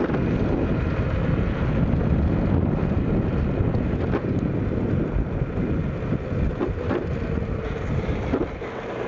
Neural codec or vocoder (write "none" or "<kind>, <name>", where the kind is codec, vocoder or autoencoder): none